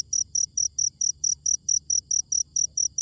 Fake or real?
real